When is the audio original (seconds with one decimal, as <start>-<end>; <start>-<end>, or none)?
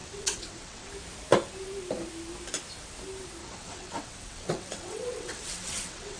0.9-3.4